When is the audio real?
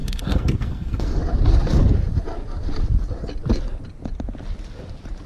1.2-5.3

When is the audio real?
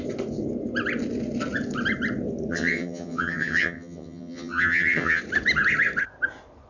0.0-2.5; 5.2-6.7